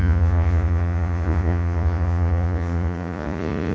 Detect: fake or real fake